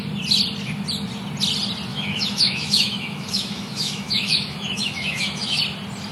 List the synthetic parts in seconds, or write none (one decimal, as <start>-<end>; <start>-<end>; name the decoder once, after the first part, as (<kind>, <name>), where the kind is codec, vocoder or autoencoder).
1.9-5.6 (autoencoder, DAC-VAE)